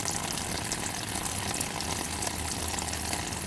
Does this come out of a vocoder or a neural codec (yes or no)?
no